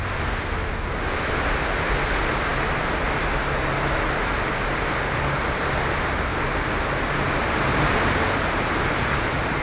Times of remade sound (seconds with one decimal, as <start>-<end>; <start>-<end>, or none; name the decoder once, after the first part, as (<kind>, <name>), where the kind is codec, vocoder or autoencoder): 6.3-9.6 (vocoder, BigVGAN v2)